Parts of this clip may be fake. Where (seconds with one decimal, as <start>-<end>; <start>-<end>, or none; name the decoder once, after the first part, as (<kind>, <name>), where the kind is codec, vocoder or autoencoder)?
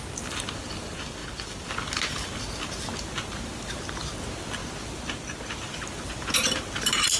none